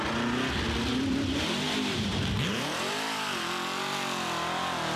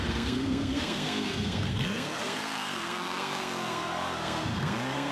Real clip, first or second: first